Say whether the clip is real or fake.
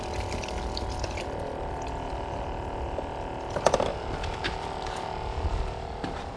real